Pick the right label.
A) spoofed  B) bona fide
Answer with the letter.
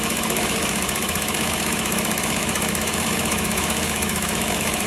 A